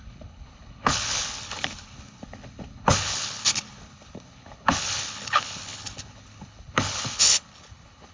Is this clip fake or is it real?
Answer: fake